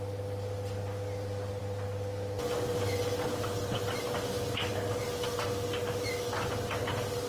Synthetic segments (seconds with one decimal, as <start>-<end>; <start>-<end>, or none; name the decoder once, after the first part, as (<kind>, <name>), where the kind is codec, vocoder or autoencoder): none